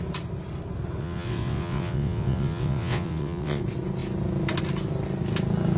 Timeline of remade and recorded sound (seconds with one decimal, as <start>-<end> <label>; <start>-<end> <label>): 0.0-1.0 recorded; 1.0-3.6 remade; 3.6-5.8 recorded